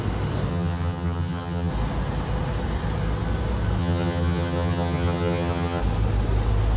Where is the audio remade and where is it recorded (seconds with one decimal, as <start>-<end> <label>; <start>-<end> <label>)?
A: 0.0-0.5 recorded; 0.5-1.7 remade; 1.7-3.8 recorded; 3.8-5.8 remade; 5.8-6.8 recorded